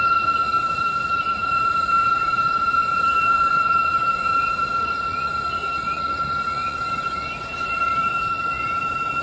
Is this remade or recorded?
remade